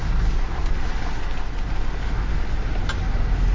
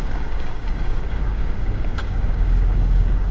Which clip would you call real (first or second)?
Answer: first